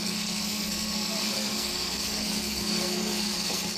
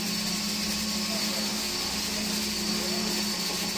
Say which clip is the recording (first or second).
second